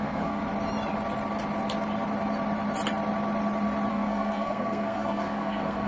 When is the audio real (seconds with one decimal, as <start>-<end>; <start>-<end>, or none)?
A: 0.4-3.9